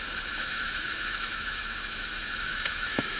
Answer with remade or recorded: remade